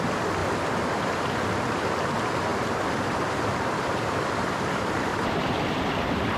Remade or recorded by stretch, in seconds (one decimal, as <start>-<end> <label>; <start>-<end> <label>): 0.0-5.1 recorded; 5.1-6.0 remade; 6.0-6.4 recorded